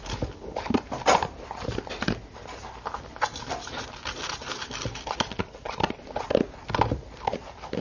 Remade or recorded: recorded